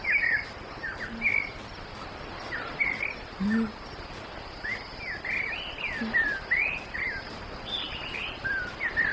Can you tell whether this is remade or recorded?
recorded